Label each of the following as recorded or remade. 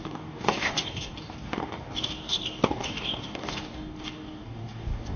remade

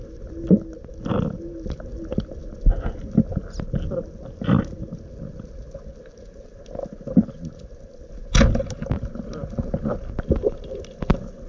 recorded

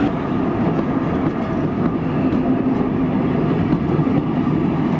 recorded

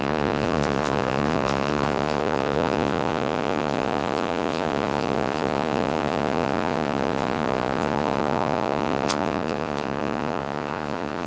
remade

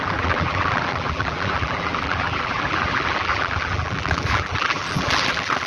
remade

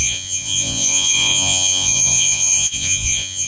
remade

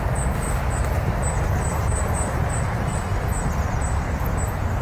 recorded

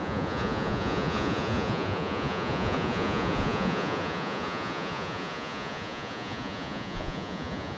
remade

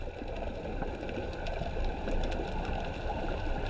recorded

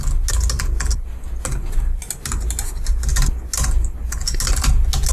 recorded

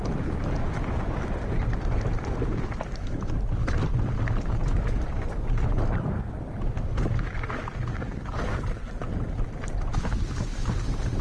recorded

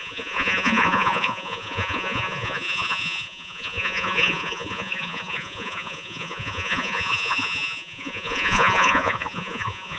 remade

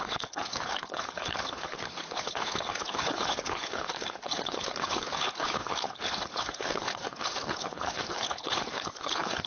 remade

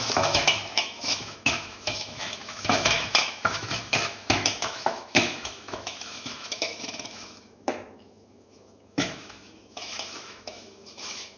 remade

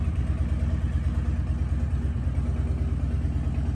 recorded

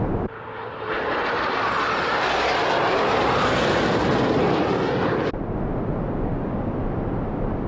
recorded